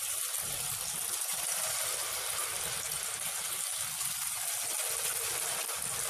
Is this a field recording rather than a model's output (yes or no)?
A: yes